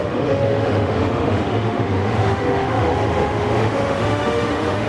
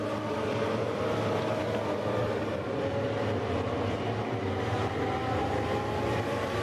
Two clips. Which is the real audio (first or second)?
second